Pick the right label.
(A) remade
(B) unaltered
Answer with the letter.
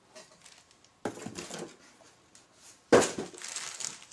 B